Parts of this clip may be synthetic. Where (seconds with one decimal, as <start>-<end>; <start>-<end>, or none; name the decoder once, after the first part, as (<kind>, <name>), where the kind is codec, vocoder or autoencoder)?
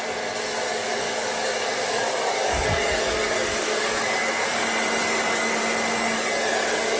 0.7-4.6 (codec, DAC); 5.0-5.6